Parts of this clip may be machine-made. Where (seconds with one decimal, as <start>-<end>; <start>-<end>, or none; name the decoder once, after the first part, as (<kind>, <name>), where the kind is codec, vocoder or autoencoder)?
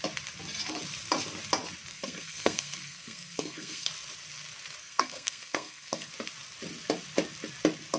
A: 1.9-3.9 (codec, SNAC); 4.8-6.1